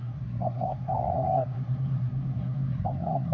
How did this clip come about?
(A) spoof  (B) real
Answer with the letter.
A